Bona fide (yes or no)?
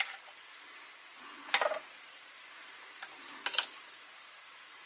yes